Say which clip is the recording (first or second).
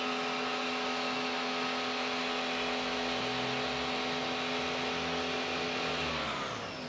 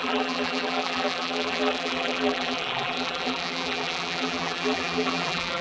first